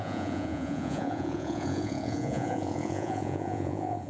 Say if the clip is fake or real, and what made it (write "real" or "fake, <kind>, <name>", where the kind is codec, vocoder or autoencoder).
fake, vocoder, Vocos